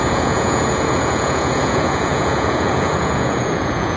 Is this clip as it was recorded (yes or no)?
no